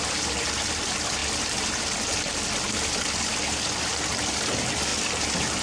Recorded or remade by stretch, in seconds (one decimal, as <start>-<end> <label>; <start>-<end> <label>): 0.0-5.6 recorded